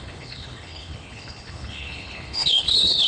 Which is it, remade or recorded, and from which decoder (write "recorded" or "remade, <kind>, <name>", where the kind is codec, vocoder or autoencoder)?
remade, codec, HILCodec